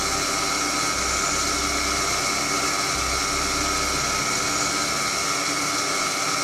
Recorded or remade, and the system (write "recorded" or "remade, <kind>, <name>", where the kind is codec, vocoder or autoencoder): recorded